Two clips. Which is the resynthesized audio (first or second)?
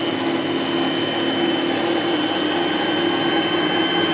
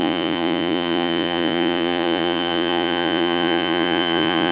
second